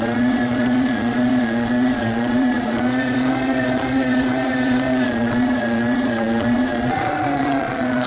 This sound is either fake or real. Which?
fake